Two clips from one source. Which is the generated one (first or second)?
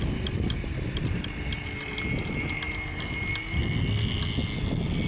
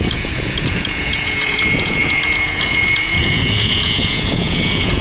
second